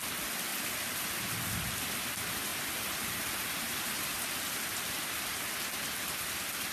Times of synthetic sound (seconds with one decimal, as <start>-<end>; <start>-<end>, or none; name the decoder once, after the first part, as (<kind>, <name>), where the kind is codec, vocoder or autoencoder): 0.5-1.1 (vocoder, BigVGAN v2); 2.5-5.0